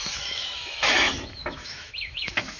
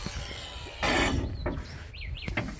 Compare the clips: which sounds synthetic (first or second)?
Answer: first